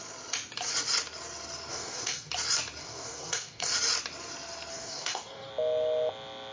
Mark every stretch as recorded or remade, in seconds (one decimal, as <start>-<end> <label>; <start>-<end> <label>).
0.0-1.7 recorded; 1.7-2.3 remade; 2.3-2.8 recorded; 2.8-3.7 remade; 3.7-4.7 recorded; 4.7-5.5 remade; 5.5-6.5 recorded